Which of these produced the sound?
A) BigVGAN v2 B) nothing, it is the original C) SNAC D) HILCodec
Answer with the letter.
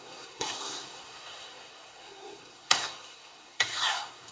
C